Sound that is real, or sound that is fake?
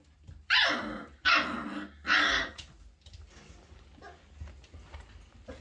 real